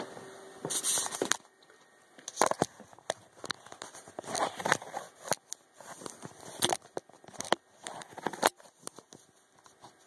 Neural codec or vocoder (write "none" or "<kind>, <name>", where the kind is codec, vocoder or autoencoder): none